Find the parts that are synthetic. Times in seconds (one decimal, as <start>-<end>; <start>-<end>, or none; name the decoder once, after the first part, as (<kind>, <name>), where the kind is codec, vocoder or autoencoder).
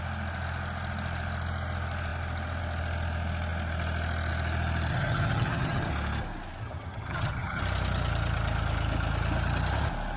4.9-5.9 (vocoder, HiFi-GAN); 6.6-7.6